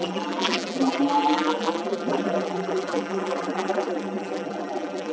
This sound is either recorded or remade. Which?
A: remade